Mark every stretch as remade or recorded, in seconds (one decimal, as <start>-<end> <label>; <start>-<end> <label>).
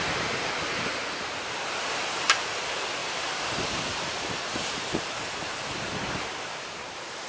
0.0-7.3 remade